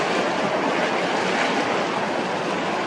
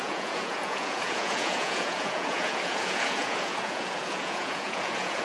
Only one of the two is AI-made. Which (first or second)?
second